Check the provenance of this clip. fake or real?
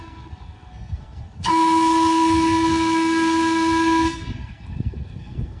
fake